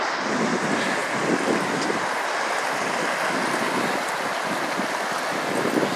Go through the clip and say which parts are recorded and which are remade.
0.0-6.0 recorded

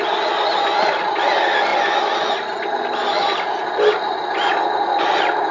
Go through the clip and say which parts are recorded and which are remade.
0.0-5.5 recorded

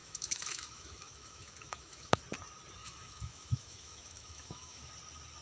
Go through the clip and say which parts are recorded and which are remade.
0.0-2.2 remade; 2.2-2.8 recorded; 2.8-4.9 remade; 4.9-5.4 recorded

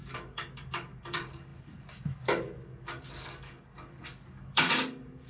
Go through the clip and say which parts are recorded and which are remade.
0.0-5.3 remade

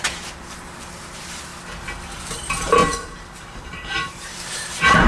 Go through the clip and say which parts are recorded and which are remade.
0.0-1.5 remade; 1.5-2.2 recorded; 2.2-5.1 remade